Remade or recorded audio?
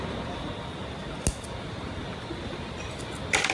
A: recorded